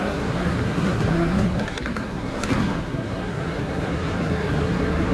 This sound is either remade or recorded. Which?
remade